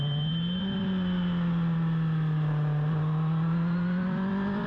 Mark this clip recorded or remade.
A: recorded